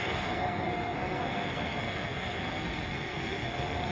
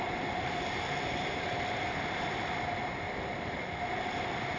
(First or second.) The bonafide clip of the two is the second